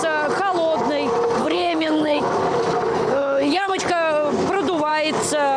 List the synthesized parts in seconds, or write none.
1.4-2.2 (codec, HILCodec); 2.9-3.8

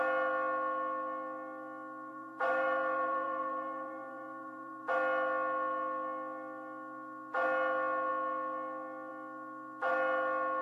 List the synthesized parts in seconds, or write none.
2.1-4.9 (vocoder, BigVGAN v2)

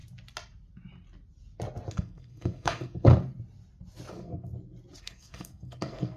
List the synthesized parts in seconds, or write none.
1.9-3.1 (codec, SNAC); 4.1-4.5; 5.0-6.2